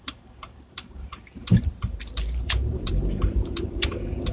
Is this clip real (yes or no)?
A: no